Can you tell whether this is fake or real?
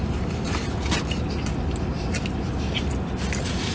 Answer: real